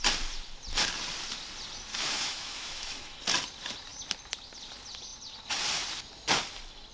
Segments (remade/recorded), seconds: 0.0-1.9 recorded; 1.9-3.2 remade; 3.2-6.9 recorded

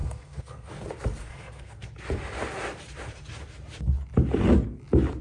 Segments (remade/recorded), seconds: 0.0-0.7 remade; 0.7-1.3 recorded; 1.3-1.9 remade; 1.9-5.2 recorded

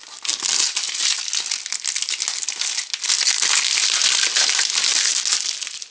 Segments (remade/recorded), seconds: 0.0-5.9 recorded

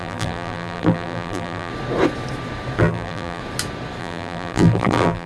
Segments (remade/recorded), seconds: 0.0-1.7 remade; 1.7-2.8 recorded; 2.8-3.4 remade; 3.4-4.0 recorded; 4.0-5.3 remade

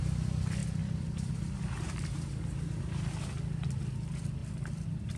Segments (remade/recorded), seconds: 0.0-0.6 remade; 0.6-1.4 recorded; 1.4-5.2 remade